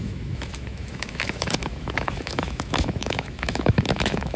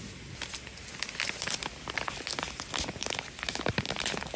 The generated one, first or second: first